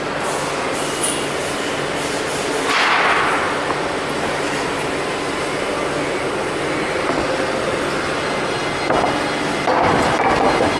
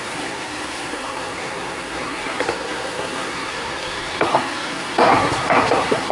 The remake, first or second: second